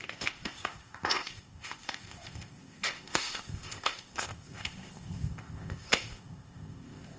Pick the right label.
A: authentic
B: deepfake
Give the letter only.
B